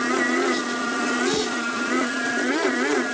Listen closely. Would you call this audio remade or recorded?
remade